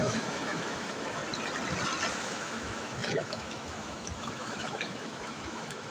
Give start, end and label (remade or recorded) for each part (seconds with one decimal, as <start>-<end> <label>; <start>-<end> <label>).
0.0-1.2 remade; 1.2-2.1 recorded; 2.1-5.9 remade